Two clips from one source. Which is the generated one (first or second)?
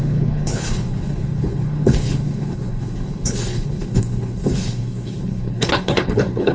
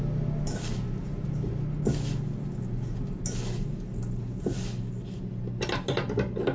first